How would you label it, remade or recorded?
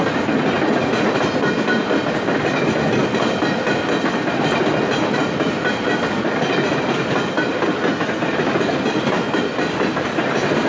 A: recorded